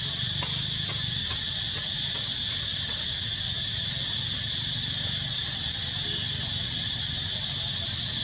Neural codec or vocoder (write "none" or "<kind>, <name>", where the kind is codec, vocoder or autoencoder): none